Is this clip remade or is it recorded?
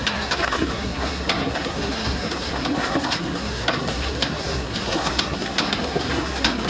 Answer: remade